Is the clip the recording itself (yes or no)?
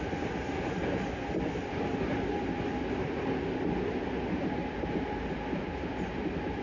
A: yes